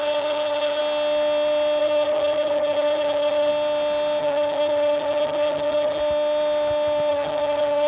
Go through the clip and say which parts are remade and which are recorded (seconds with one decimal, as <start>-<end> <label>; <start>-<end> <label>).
0.0-0.8 remade; 0.8-1.8 recorded; 1.8-3.5 remade; 3.5-4.2 recorded; 4.2-6.0 remade; 6.0-7.1 recorded; 7.1-7.9 remade